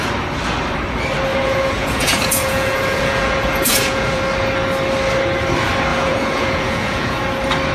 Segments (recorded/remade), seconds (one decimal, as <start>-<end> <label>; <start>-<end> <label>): 0.0-1.3 recorded; 1.3-4.2 remade; 4.2-5.9 recorded; 5.9-7.2 remade; 7.2-7.7 recorded